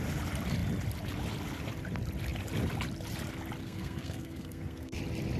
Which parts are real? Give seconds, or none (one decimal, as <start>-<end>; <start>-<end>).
0.0-3.6; 5.0-5.4